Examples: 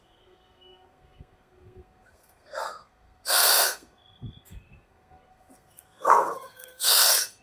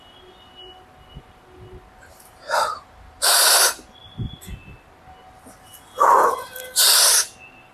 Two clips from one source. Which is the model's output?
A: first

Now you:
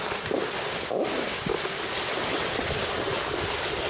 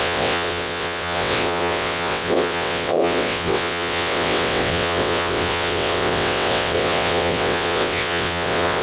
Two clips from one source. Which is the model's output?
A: second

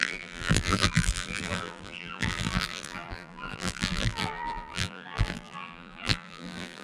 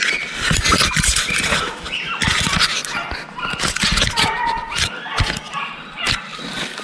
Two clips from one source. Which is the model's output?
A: first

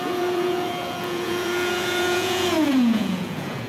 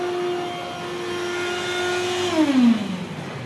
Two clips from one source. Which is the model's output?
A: first